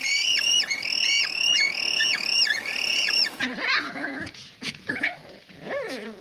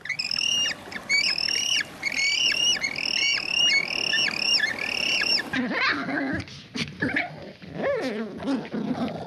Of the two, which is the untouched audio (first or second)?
second